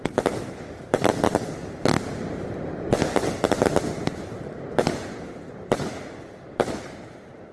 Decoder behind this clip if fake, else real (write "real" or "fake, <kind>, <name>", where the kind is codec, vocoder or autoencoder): fake, vocoder, BigVGAN v2